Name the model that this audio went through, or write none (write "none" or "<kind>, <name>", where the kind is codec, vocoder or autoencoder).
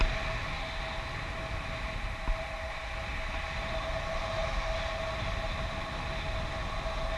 none